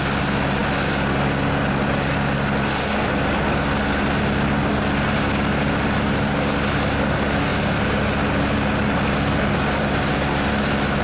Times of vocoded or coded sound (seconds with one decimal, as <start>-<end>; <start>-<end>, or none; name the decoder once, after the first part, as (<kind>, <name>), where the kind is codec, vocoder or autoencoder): none